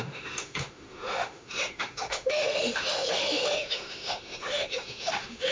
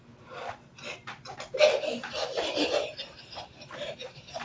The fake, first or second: first